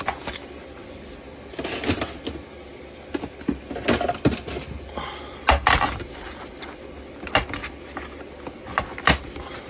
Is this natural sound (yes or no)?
yes